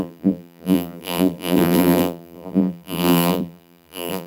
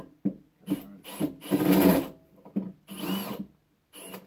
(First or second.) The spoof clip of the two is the first